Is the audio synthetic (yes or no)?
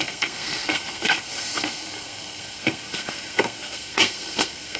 yes